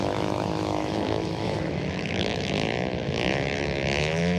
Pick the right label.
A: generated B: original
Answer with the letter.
A